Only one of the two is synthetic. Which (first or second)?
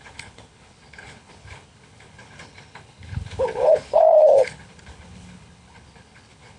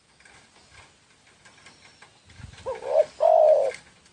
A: first